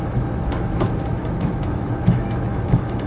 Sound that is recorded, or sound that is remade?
remade